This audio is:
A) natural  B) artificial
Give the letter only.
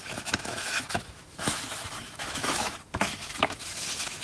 B